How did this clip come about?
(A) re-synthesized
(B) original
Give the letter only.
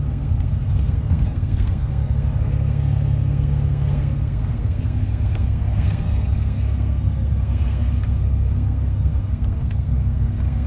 A